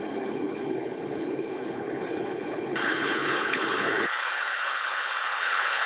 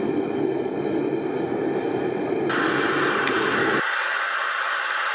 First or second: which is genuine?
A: second